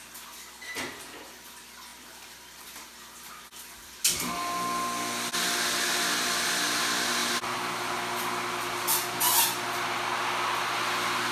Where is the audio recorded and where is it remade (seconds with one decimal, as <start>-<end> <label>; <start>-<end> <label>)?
0.0-11.3 recorded